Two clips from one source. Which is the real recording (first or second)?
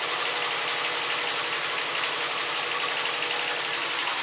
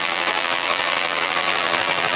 first